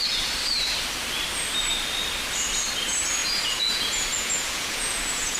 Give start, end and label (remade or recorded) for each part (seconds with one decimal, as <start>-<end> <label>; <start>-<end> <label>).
0.0-3.2 recorded; 3.2-5.4 remade